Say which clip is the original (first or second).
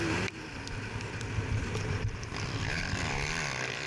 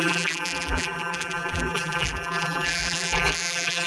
first